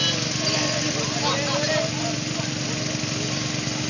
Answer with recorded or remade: recorded